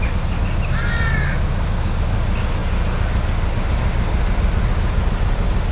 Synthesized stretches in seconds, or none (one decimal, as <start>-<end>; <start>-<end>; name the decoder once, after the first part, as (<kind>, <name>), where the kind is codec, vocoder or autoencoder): none